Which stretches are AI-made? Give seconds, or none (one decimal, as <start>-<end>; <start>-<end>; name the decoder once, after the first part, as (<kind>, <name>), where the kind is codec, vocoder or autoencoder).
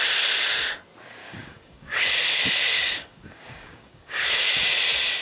1.2-4.3 (codec, DAC)